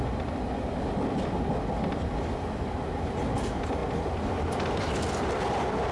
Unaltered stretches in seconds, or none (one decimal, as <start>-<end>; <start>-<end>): 0.0-5.9